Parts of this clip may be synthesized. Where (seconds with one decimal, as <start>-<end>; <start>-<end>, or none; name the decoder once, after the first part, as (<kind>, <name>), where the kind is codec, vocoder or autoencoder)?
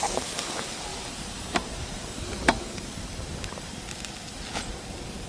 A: 0.9-4.1 (vocoder, BigVGAN v2)